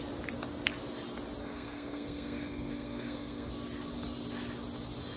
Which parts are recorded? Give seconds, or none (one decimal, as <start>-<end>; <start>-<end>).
0.0-1.4; 3.5-5.2